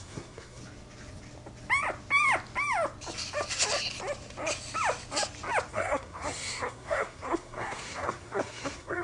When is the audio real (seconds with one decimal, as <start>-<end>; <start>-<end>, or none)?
0.6-5.7

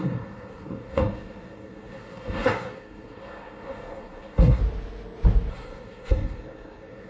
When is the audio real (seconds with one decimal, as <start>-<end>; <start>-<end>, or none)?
4.6-5.5

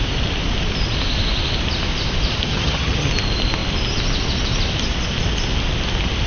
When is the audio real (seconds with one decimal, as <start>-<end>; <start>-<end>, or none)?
0.0-2.5; 3.1-6.3

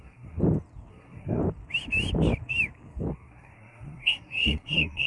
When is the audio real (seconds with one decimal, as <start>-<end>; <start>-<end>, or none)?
0.4-0.9; 1.4-3.1